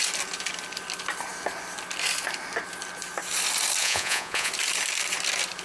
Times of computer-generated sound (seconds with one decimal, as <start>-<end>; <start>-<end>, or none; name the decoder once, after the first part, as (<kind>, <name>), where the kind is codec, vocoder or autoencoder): 3.8-4.5 (vocoder, Vocos)